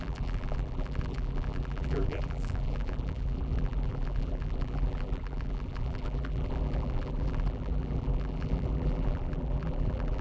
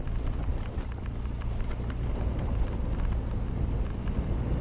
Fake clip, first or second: first